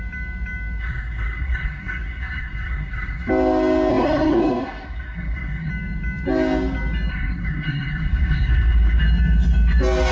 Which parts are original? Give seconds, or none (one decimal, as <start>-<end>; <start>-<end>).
0.0-0.8; 3.3-3.9; 5.7-7.1; 9.0-10.1